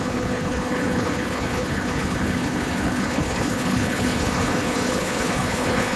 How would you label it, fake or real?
fake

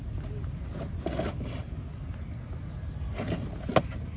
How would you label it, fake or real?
real